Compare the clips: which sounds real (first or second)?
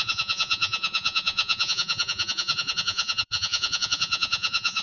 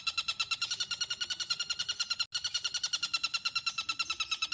second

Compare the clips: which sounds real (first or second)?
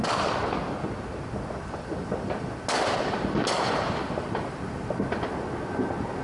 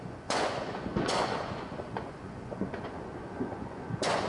first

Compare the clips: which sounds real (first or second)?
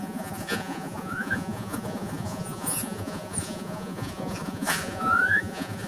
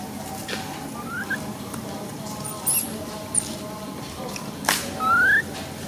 second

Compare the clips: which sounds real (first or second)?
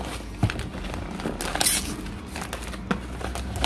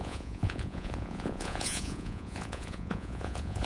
first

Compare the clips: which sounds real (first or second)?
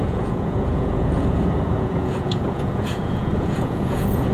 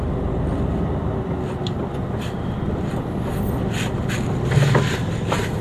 second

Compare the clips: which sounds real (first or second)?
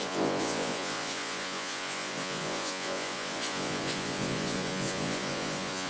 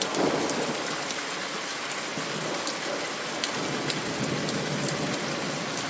second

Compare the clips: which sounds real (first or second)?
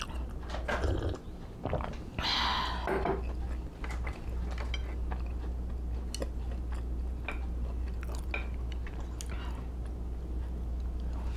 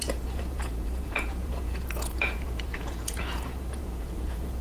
first